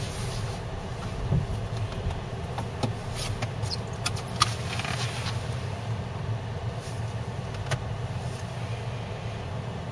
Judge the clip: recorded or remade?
recorded